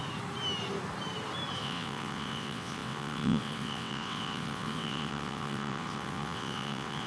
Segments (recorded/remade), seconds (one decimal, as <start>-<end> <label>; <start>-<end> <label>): 0.0-1.6 recorded; 1.6-7.1 remade